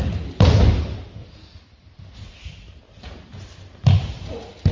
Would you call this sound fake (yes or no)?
no